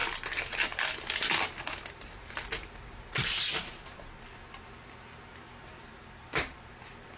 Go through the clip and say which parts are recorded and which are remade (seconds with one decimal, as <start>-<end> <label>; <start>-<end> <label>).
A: 0.0-7.2 recorded

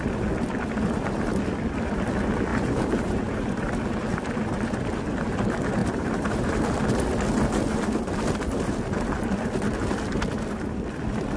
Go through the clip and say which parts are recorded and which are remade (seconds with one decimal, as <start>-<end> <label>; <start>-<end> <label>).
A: 0.0-2.5 recorded; 2.5-3.7 remade; 3.7-5.8 recorded; 5.8-6.7 remade; 6.7-11.4 recorded